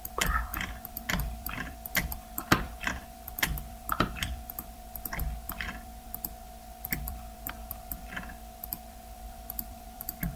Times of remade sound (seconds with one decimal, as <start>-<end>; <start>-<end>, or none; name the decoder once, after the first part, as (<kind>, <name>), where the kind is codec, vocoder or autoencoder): 0.0-10.4 (vocoder, BigVGAN v2)